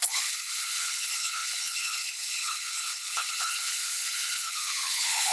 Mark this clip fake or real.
fake